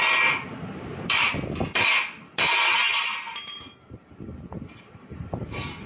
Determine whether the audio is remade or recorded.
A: recorded